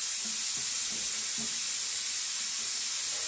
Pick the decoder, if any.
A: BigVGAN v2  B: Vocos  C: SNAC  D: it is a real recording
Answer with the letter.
D